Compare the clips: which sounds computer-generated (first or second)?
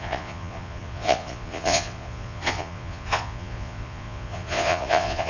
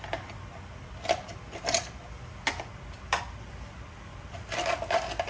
first